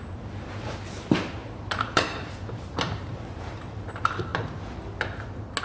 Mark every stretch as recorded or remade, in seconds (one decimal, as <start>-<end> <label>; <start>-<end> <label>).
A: 0.0-4.3 remade; 4.3-5.6 recorded

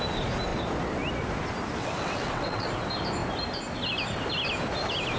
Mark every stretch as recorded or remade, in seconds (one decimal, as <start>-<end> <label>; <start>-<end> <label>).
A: 0.0-1.8 recorded; 1.8-2.7 remade; 2.7-5.2 recorded

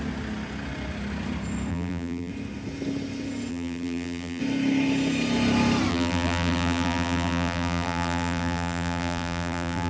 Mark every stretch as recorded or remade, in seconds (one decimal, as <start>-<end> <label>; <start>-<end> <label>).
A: 0.0-1.7 recorded; 1.7-2.3 remade; 2.3-3.5 recorded; 3.5-4.4 remade; 4.4-5.9 recorded; 5.9-9.9 remade

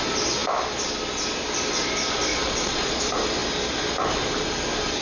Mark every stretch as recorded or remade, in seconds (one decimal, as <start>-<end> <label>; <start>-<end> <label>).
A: 0.0-2.3 recorded; 2.3-3.0 remade; 3.0-5.0 recorded

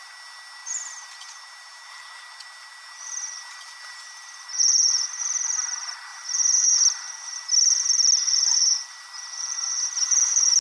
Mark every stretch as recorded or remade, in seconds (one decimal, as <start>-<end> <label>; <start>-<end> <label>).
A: 0.0-0.6 recorded; 0.6-1.9 remade; 1.9-10.6 recorded